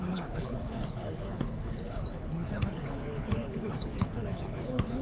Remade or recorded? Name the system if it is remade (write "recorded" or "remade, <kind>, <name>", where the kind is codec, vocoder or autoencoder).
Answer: remade, codec, HILCodec